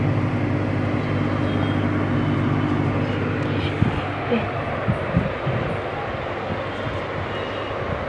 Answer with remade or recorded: recorded